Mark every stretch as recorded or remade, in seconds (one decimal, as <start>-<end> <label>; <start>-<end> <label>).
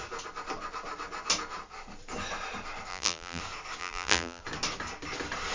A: 0.0-2.9 recorded; 2.9-3.4 remade; 3.4-3.8 recorded; 3.8-4.4 remade; 4.4-5.5 recorded